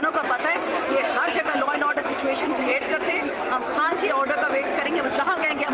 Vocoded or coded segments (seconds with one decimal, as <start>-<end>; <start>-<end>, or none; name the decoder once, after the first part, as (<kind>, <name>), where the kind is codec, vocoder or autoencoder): none